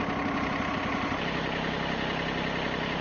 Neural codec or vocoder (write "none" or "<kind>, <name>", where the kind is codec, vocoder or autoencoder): none